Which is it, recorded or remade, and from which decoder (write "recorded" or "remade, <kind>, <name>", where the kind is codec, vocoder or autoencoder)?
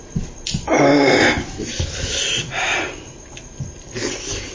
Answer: recorded